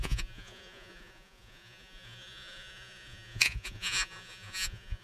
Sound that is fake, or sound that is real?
fake